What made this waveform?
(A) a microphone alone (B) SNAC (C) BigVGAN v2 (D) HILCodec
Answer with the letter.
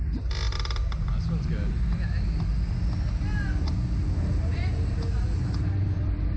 A